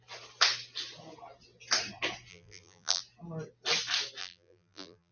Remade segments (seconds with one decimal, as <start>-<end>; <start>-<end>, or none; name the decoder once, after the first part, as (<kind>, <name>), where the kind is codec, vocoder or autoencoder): 2.3-3.0 (vocoder, BigVGAN v2); 4.2-5.1